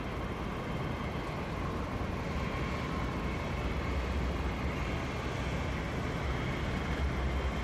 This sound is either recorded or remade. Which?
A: recorded